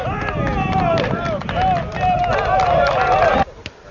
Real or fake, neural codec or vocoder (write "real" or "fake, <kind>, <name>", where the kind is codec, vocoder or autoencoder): real